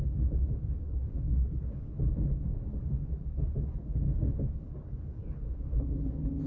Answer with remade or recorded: remade